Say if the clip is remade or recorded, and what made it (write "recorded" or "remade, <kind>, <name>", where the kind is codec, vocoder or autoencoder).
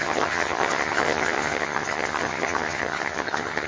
remade, vocoder, HiFi-GAN